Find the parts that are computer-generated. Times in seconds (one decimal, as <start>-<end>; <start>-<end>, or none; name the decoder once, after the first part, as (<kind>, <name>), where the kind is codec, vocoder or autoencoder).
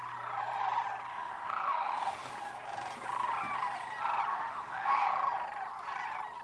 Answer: 1.1-2.3 (autoencoder, DAC-VAE); 4.3-5.1